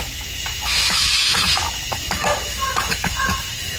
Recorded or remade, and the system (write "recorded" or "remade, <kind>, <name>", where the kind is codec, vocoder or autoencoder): remade, autoencoder, DAC-VAE